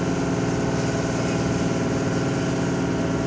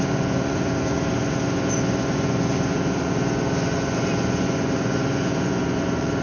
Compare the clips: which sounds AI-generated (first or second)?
second